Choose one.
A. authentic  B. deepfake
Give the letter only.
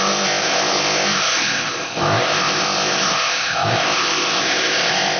B